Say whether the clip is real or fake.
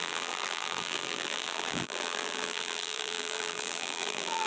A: fake